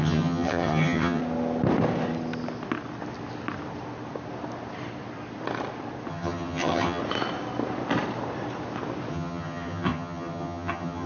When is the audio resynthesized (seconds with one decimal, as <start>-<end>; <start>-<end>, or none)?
0.0-1.2; 6.1-7.0; 9.1-11.1